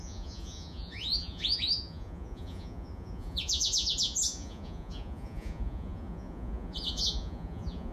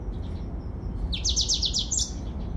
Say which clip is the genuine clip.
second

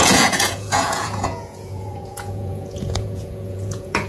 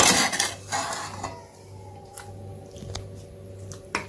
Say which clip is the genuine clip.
second